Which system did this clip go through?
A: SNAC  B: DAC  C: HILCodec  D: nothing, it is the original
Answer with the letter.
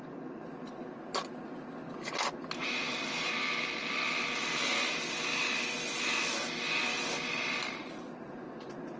D